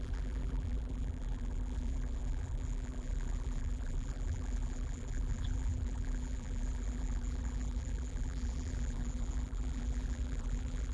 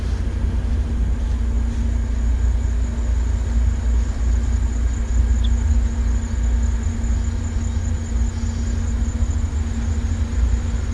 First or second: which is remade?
first